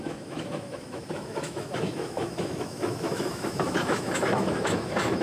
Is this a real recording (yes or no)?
no